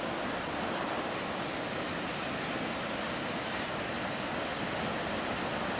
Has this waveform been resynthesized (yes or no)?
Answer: no